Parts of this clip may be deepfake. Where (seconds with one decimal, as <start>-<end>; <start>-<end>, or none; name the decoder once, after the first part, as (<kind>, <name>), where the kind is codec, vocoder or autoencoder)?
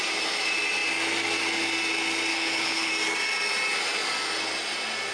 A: 2.3-2.9 (codec, HILCodec)